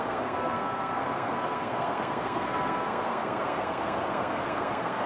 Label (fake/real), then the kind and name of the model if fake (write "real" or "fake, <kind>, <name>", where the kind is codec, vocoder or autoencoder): fake, codec, SNAC